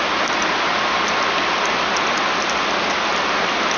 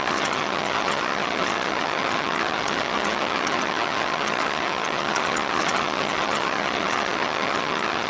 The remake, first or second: second